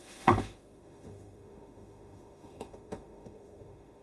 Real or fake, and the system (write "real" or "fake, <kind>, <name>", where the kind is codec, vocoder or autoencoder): fake, autoencoder, DAC-VAE